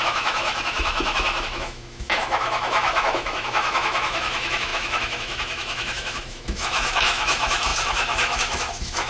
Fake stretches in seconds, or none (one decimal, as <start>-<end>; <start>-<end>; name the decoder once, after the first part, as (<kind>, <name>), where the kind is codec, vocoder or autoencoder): 0.0-9.1 (autoencoder, DAC-VAE)